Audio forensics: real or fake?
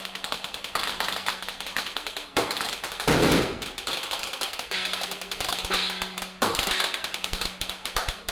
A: fake